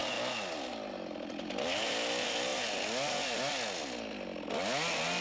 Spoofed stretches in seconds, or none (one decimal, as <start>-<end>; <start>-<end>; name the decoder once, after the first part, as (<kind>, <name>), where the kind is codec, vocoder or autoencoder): none